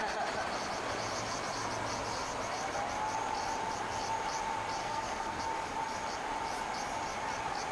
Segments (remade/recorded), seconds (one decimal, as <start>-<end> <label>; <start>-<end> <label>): 0.0-4.8 recorded; 4.8-5.4 remade; 5.4-7.7 recorded

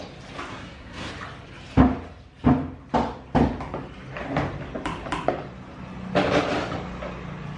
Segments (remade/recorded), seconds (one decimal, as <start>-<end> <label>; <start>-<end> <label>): 0.0-0.5 recorded; 0.5-1.1 remade; 1.1-7.6 recorded